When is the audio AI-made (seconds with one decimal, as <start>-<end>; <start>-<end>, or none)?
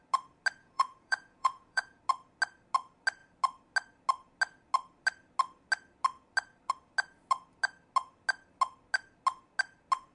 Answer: 0.6-2.0